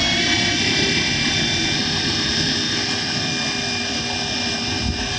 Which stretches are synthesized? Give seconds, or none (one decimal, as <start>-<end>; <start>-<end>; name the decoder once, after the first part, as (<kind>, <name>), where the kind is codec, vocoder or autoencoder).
none